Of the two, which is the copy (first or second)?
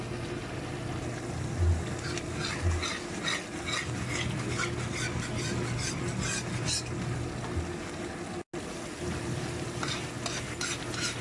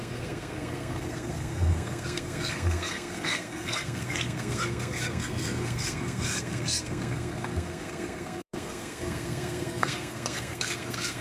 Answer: second